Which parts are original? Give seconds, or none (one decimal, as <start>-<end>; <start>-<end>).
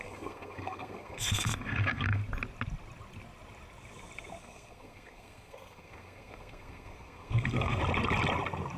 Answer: 2.2-4.4; 7.8-8.8